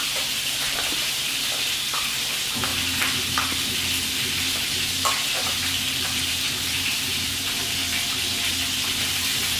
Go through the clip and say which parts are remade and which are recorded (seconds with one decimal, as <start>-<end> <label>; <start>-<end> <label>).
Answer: 0.0-2.7 remade; 2.7-4.4 recorded; 4.4-7.8 remade; 7.8-9.1 recorded; 9.1-9.6 remade